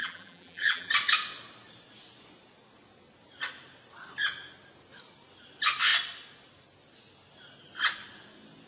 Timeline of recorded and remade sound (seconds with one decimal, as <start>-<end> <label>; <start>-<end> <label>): 0.0-0.9 remade; 0.9-8.7 recorded